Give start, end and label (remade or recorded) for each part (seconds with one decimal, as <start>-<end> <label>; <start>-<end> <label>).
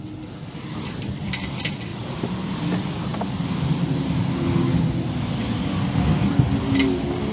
0.0-1.9 recorded; 1.9-2.6 remade; 2.6-7.3 recorded